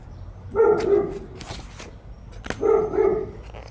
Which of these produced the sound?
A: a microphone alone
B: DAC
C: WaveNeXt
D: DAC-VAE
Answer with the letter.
A